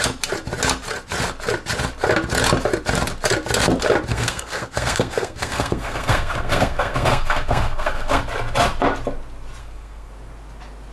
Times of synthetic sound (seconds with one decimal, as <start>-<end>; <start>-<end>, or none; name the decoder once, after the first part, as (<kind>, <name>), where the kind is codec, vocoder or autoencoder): 4.1-8.2 (codec, SNAC); 9.6-10.1